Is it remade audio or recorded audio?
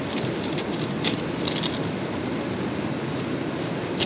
recorded